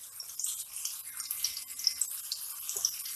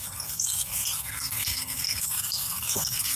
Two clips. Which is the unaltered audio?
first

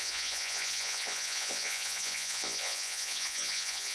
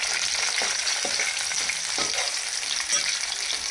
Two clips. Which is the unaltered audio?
second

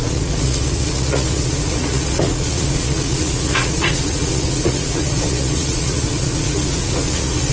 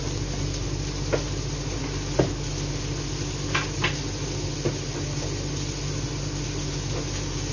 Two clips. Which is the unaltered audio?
second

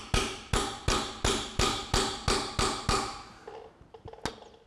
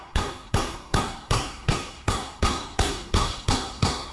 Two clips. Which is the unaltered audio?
first